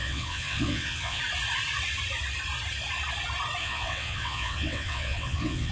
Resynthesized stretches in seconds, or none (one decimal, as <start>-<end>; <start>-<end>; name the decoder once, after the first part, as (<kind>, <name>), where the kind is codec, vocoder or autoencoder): 0.0-1.2 (vocoder, WaveNeXt); 3.6-5.7